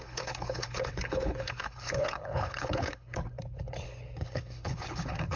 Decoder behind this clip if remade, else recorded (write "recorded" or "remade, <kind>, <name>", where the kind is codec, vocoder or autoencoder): remade, codec, HILCodec